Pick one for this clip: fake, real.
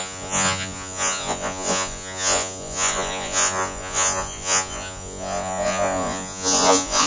fake